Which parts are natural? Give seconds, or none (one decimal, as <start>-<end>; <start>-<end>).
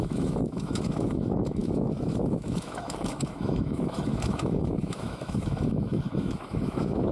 none